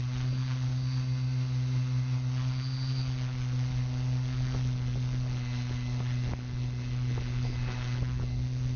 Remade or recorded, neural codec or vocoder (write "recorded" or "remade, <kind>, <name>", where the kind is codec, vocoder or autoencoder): recorded